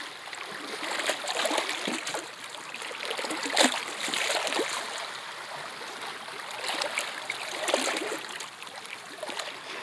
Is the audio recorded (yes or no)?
yes